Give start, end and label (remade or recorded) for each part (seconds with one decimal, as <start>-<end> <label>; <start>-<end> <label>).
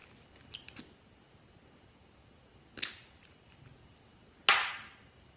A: 0.0-5.4 recorded